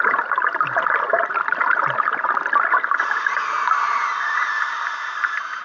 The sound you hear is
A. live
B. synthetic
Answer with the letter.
A